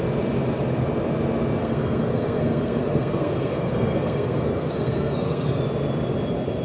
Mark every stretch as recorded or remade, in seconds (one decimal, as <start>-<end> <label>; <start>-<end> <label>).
0.0-1.6 recorded; 1.6-5.6 remade; 5.6-6.6 recorded